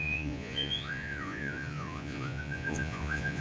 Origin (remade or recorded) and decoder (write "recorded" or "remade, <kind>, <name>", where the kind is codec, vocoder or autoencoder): remade, vocoder, Vocos